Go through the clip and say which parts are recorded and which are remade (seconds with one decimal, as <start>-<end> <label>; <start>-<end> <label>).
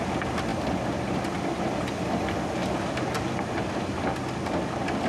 0.0-5.1 recorded